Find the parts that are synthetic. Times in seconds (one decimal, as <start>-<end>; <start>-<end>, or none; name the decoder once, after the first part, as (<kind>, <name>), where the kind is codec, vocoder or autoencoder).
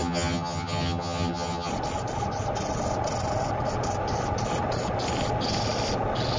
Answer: 0.0-1.7 (vocoder, HiFi-GAN)